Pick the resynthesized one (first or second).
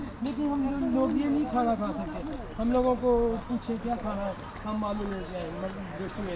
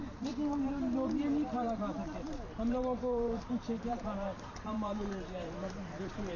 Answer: second